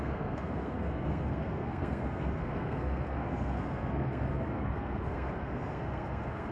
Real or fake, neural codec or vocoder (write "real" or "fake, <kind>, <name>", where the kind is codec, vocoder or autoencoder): fake, codec, SNAC